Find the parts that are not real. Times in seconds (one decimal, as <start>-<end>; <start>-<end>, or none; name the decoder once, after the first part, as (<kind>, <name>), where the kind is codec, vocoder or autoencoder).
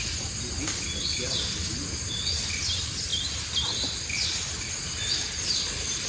none